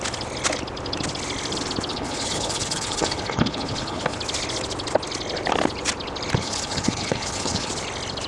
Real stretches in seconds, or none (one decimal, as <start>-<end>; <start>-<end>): 0.0-1.9; 4.2-6.4; 7.7-8.3